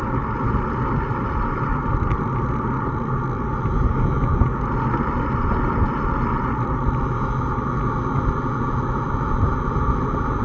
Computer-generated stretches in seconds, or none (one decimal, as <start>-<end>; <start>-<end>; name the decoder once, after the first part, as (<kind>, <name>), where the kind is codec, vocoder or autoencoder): none